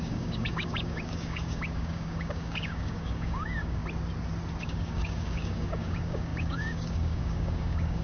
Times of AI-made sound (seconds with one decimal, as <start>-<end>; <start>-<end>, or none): 0.0-3.8; 4.6-8.0